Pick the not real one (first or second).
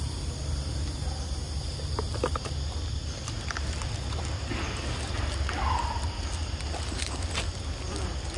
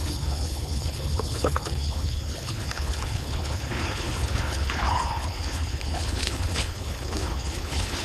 second